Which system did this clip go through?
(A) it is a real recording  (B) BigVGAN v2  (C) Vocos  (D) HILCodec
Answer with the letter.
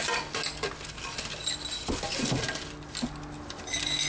A